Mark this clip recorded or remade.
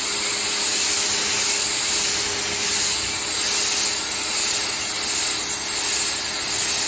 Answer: recorded